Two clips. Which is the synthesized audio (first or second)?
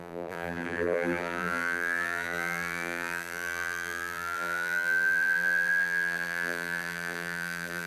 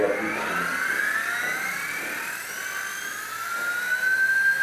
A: first